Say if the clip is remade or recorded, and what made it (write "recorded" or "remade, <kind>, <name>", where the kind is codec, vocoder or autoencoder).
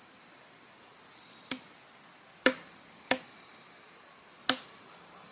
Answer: recorded